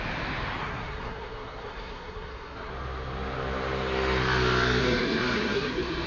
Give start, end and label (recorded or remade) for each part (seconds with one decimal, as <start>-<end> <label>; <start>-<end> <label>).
0.0-0.6 recorded; 0.6-2.7 remade; 2.7-4.8 recorded; 4.8-6.1 remade